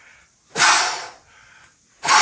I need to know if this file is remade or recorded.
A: remade